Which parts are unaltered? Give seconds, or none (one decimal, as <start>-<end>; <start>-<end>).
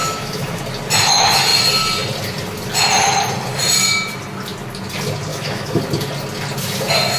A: 0.6-5.3; 5.8-7.2